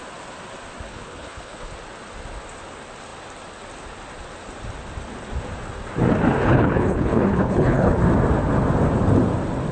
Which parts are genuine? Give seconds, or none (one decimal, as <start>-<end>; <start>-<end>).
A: 0.0-0.9; 1.7-6.4; 8.0-9.7